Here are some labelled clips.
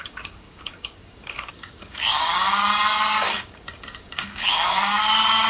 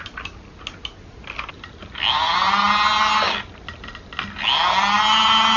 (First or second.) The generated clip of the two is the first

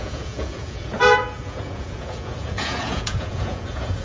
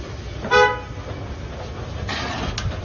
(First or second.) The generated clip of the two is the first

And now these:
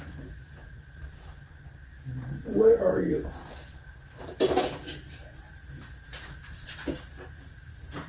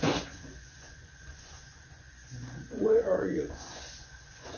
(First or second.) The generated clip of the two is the second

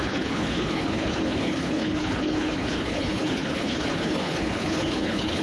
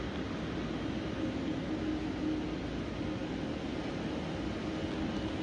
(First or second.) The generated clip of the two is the first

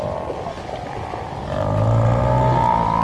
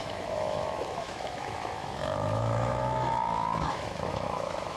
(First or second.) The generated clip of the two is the second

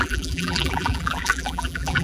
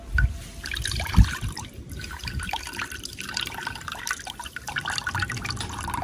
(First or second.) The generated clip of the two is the first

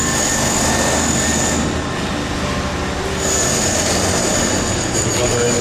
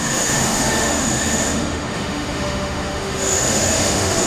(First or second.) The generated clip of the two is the second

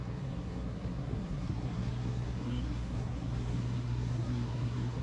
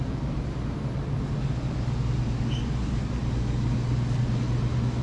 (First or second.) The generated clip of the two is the first